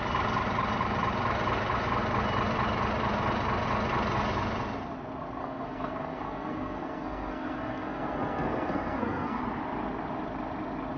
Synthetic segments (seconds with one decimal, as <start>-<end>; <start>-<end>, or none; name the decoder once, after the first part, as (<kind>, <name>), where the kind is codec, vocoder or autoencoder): 5.4-9.4 (codec, SNAC)